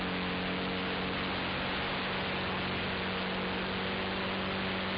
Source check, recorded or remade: recorded